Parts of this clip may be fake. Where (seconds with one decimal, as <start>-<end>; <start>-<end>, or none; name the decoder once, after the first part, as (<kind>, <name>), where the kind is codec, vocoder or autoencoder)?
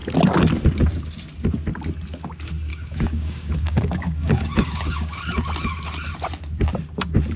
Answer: 2.7-5.2 (codec, DAC)